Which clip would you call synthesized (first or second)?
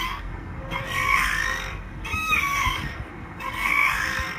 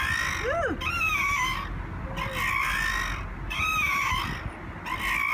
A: first